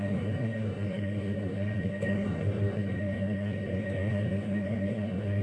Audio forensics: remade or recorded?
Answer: remade